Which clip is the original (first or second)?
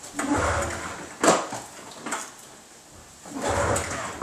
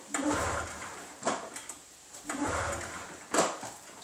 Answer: first